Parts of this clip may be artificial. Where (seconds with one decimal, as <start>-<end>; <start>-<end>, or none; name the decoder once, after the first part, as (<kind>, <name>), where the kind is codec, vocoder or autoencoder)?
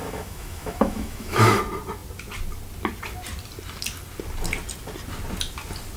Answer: 0.0-1.6 (autoencoder, DAC-VAE)